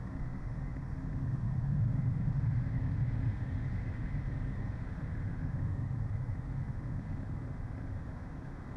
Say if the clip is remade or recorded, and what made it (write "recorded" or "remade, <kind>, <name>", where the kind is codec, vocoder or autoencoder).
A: remade, autoencoder, DAC-VAE